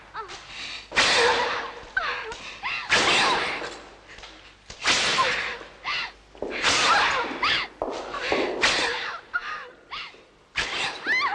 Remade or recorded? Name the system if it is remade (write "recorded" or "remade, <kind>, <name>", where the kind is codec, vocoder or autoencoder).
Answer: recorded